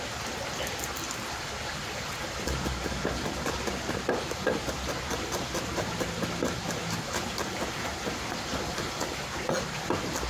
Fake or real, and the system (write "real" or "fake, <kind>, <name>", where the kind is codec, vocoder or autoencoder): real